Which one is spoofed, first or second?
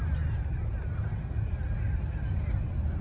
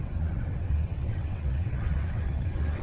second